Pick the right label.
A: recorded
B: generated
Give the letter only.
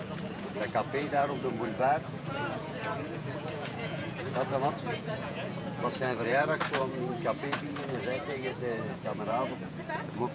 B